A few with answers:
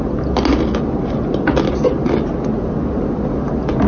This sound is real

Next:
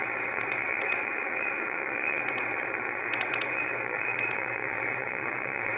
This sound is fake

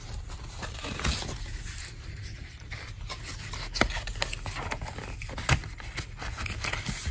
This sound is real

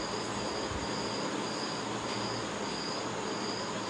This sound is real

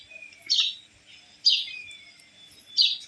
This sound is real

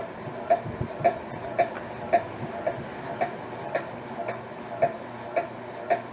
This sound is real